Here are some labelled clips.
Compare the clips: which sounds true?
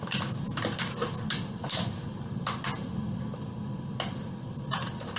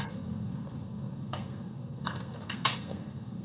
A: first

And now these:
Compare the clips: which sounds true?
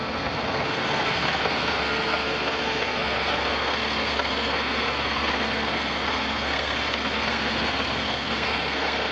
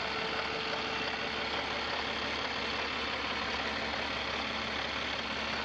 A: second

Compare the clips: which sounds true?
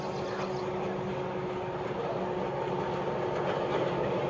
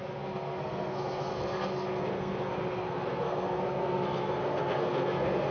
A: first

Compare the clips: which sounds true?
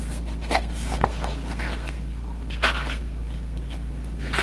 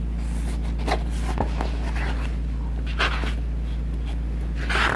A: second